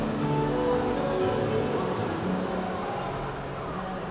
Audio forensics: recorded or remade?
recorded